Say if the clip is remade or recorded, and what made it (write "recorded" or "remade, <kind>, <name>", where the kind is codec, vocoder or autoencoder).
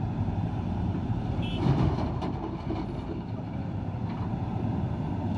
remade, vocoder, BigVGAN v2